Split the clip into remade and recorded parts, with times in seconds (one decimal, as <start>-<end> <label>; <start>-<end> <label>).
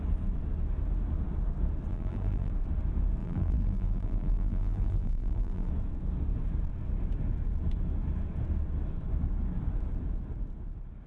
0.0-1.9 recorded; 1.9-2.5 remade; 2.5-3.2 recorded; 3.2-5.7 remade; 5.7-11.1 recorded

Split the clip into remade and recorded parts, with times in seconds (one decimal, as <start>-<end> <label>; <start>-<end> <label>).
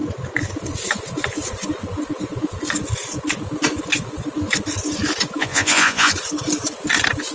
0.0-5.4 recorded; 5.4-6.1 remade; 6.1-7.3 recorded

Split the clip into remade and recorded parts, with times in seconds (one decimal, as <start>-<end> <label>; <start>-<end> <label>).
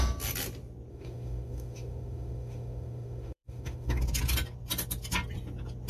0.0-0.9 recorded; 0.9-4.0 remade; 4.0-5.9 recorded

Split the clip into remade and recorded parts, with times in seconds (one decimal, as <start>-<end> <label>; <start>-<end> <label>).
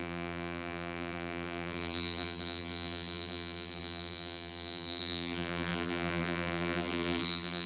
0.0-7.7 remade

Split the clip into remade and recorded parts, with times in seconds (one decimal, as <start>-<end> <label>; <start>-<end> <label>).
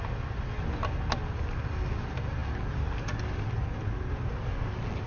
0.0-5.1 recorded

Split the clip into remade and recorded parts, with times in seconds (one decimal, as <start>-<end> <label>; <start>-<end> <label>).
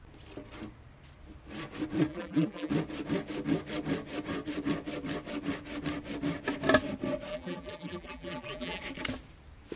0.0-2.1 recorded; 2.1-2.7 remade; 2.7-7.3 recorded; 7.3-8.8 remade; 8.8-9.8 recorded